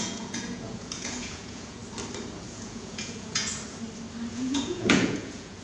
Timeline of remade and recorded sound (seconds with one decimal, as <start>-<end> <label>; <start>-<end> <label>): 0.0-1.8 remade; 1.8-2.5 recorded; 2.5-3.5 remade; 3.5-4.3 recorded; 4.3-5.6 remade